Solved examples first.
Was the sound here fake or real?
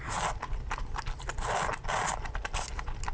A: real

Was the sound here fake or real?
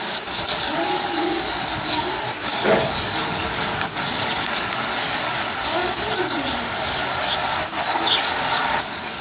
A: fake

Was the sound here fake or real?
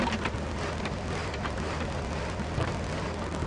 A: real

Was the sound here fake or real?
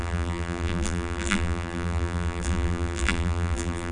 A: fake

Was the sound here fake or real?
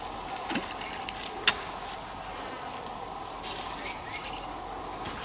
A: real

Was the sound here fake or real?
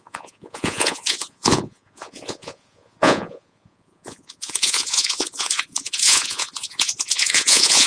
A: fake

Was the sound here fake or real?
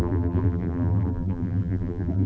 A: fake